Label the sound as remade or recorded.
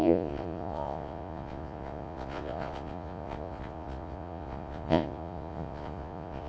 remade